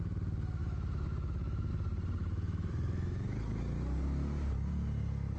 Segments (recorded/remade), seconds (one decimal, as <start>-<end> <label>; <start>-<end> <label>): 0.0-0.6 recorded; 0.6-1.7 remade; 1.7-2.2 recorded; 2.2-2.7 remade; 2.7-5.4 recorded